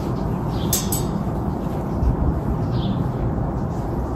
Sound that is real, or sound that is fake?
real